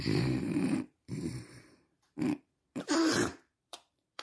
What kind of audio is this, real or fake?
fake